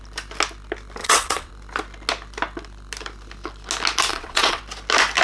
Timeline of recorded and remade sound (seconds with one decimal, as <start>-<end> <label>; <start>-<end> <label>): 0.0-1.0 recorded; 1.0-1.5 remade; 1.5-4.1 recorded; 4.1-4.6 remade; 4.6-5.2 recorded

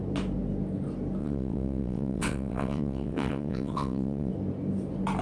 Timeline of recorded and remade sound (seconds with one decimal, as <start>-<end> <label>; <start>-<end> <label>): 0.0-1.2 recorded; 1.2-4.3 remade; 4.3-5.2 recorded

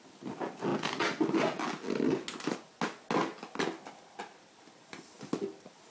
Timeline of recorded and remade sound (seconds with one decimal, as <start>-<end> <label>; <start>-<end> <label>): 0.0-5.9 recorded

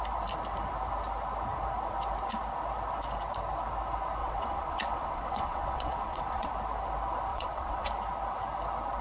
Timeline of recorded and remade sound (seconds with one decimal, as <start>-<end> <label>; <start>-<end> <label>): 0.0-4.2 recorded; 4.2-6.5 remade; 6.5-7.3 recorded; 7.3-7.9 remade; 7.9-9.0 recorded

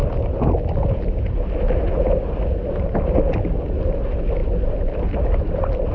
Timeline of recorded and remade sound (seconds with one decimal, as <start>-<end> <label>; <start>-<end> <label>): 0.0-5.9 recorded